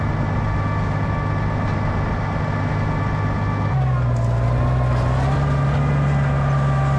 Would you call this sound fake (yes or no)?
no